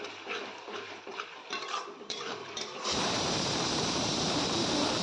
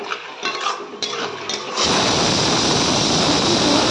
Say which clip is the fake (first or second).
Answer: first